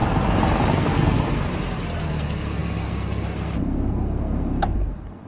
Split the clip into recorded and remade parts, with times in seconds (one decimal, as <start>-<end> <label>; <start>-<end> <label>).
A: 0.0-0.7 recorded; 0.7-1.5 remade; 1.5-2.1 recorded; 2.1-5.3 remade